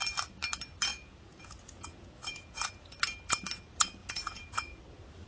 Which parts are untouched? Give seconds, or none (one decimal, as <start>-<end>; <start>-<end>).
0.0-0.9; 3.0-4.0; 4.8-5.3